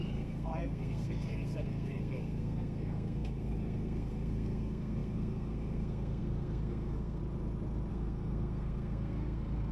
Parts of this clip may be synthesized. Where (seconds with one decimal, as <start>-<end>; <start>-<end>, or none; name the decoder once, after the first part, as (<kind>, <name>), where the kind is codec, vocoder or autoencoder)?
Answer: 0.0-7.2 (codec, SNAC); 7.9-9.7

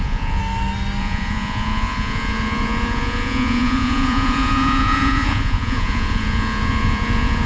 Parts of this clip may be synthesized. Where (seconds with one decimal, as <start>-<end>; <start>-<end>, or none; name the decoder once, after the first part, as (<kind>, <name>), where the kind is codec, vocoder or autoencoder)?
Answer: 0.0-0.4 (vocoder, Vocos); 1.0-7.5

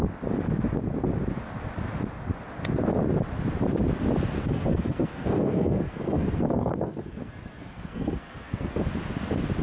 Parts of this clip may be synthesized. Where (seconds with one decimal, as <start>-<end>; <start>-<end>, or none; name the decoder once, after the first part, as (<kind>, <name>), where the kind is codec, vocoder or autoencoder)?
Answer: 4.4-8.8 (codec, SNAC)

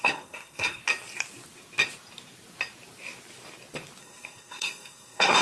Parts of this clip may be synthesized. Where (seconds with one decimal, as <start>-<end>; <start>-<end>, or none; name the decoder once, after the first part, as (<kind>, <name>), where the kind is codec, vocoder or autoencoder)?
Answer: 0.0-0.8 (codec, SNAC); 4.0-5.4

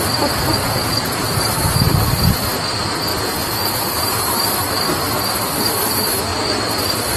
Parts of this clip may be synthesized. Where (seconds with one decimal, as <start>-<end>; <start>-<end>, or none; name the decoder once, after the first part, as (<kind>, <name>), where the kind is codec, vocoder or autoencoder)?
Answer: 0.6-1.2 (vocoder, Vocos); 3.1-4.3